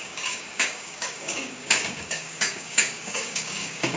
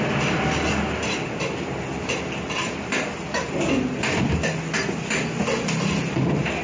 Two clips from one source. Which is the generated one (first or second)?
first